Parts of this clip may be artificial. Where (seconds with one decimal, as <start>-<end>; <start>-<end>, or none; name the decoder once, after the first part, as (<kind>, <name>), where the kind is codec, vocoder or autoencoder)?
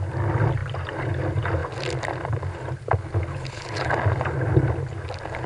3.3-3.9 (codec, HILCodec)